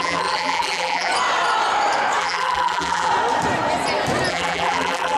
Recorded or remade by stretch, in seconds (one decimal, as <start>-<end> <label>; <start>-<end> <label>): 0.0-1.1 remade; 1.1-2.2 recorded; 2.2-3.1 remade; 3.1-4.3 recorded; 4.3-5.2 remade